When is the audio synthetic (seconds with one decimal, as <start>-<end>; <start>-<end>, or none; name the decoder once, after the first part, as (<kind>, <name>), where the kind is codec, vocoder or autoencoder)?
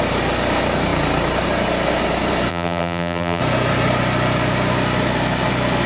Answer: 2.5-3.4 (vocoder, BigVGAN v2)